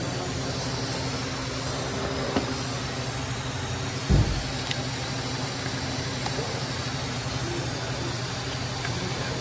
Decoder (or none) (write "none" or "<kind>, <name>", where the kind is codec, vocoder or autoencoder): none